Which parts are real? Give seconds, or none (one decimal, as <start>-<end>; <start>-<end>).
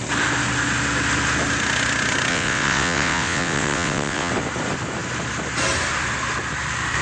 0.0-2.3; 4.3-7.0